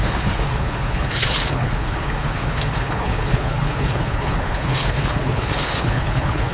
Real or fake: fake